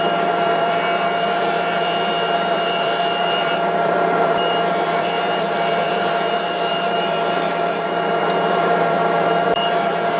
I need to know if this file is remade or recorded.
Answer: remade